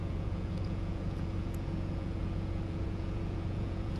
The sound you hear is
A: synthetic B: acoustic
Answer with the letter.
A